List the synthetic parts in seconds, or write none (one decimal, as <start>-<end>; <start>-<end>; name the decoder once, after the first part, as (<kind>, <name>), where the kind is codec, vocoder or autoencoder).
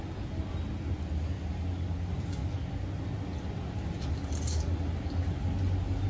none